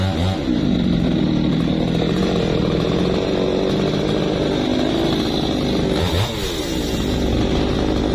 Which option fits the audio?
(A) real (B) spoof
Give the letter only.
A